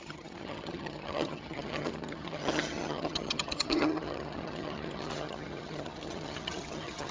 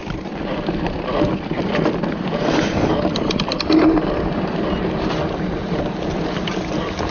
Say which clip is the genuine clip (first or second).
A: second